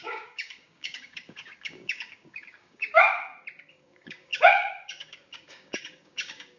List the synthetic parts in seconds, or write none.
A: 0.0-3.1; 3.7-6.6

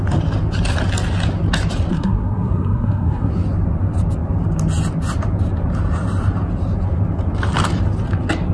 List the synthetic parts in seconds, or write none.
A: 1.9-3.3

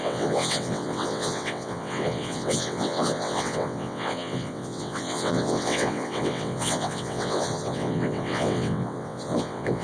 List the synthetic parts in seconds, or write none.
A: 0.0-9.8

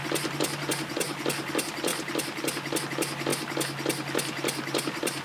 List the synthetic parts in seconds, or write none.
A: 0.0-1.9; 2.8-3.3; 4.8-5.2

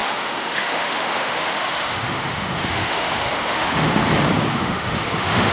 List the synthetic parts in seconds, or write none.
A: 0.0-4.0; 4.5-5.5